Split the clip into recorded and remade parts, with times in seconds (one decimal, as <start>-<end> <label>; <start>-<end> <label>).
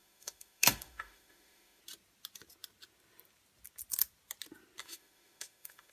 0.0-1.8 remade; 1.8-4.8 recorded; 4.8-5.9 remade